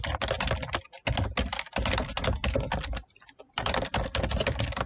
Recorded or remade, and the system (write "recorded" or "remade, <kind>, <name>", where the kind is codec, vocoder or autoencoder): recorded